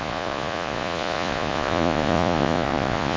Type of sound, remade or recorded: remade